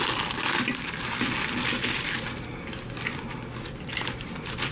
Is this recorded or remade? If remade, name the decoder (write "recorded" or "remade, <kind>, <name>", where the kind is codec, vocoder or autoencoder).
recorded